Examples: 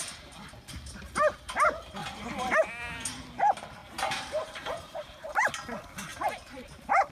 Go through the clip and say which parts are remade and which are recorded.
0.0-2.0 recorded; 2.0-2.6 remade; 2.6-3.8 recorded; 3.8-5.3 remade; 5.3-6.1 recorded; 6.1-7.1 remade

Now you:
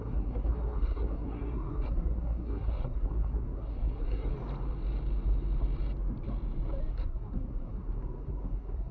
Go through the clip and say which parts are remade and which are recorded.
0.0-4.3 remade; 4.3-6.9 recorded; 6.9-8.9 remade

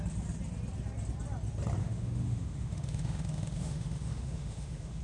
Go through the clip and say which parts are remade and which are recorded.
0.0-1.8 recorded; 1.8-5.0 remade

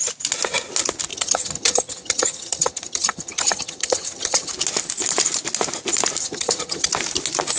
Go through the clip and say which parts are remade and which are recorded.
0.0-1.1 recorded; 1.1-4.5 remade; 4.5-6.2 recorded; 6.2-6.9 remade; 6.9-7.6 recorded

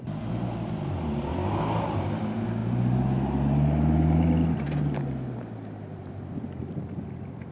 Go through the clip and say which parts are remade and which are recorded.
0.0-1.3 remade; 1.3-1.8 recorded; 1.8-2.6 remade; 2.6-5.3 recorded; 5.3-7.5 remade

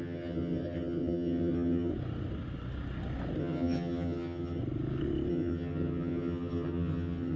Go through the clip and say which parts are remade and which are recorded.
0.0-1.9 remade; 1.9-3.4 recorded; 3.4-4.6 remade; 4.6-5.3 recorded; 5.3-7.4 remade

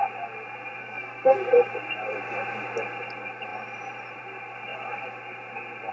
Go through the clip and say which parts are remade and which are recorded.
0.0-0.8 recorded; 0.8-1.7 remade; 1.7-5.9 recorded

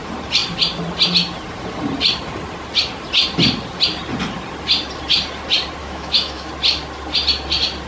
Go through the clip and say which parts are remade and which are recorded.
0.0-5.8 recorded; 5.8-6.5 remade; 6.5-7.9 recorded